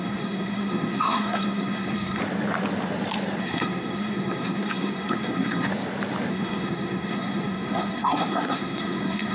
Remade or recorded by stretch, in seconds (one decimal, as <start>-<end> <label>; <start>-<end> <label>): 0.0-2.2 remade; 2.2-3.4 recorded; 3.4-5.7 remade; 5.7-6.3 recorded; 6.3-9.3 remade